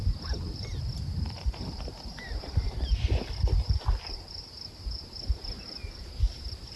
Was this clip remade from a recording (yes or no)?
yes